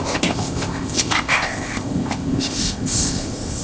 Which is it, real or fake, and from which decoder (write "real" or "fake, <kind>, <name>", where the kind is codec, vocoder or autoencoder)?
fake, codec, ZipCodec